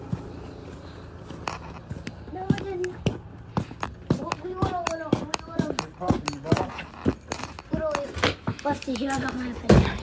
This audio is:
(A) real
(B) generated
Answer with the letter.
A